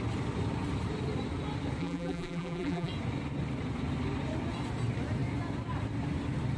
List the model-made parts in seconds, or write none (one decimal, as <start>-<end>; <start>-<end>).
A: 1.8-2.9